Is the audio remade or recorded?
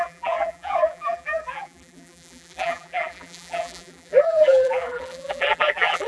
remade